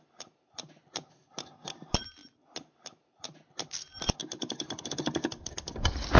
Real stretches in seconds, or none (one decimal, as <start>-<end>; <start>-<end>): 0.0-6.2

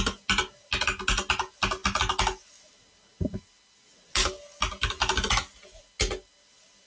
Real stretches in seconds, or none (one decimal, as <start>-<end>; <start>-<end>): 0.0-6.9

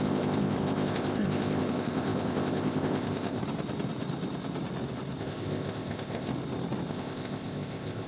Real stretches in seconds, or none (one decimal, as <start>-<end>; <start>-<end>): 3.4-5.2; 6.3-6.9

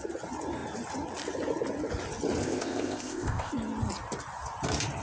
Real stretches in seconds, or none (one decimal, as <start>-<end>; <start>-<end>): 0.0-2.4; 3.5-5.0

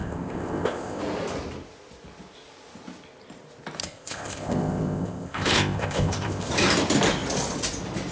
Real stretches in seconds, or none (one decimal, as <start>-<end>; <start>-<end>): 1.0-3.8; 6.5-8.1